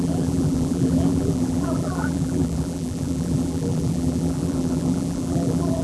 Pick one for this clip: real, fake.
fake